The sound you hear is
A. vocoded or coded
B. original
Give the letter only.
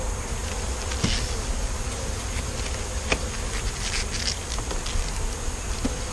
B